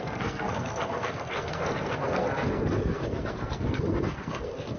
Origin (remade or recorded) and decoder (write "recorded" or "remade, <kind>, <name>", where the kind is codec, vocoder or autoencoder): remade, codec, SNAC